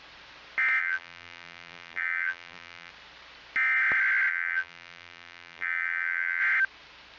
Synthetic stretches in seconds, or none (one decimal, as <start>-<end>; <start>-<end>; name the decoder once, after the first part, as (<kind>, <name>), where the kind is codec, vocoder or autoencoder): 0.8-2.9 (vocoder, BigVGAN v2); 4.3-6.4